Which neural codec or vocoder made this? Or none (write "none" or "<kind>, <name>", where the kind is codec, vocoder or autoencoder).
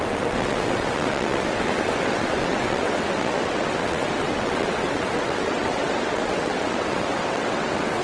vocoder, WaveNeXt